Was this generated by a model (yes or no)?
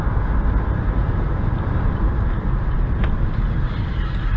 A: no